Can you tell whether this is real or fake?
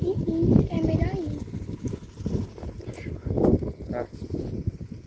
real